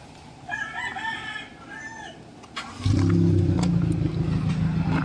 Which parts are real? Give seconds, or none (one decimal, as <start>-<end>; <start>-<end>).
0.0-5.0